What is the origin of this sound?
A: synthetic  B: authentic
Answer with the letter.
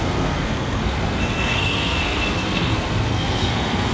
A